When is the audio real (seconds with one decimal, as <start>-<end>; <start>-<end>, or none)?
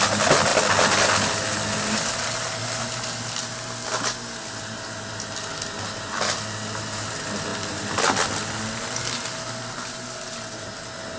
0.0-11.2